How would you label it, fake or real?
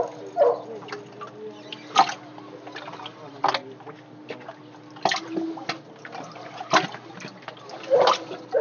real